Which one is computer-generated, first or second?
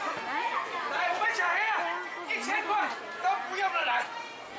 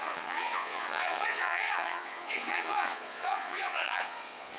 second